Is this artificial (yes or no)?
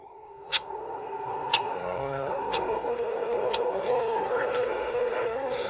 yes